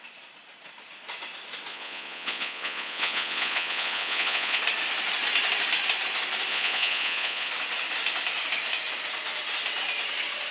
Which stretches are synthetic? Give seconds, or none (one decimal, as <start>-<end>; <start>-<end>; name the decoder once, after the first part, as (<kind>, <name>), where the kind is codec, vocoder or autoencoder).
1.7-4.6 (vocoder, Vocos); 6.5-7.5